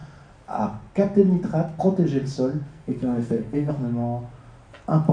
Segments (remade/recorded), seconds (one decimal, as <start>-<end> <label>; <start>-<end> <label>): 0.0-2.7 recorded; 2.7-3.7 remade; 3.7-5.1 recorded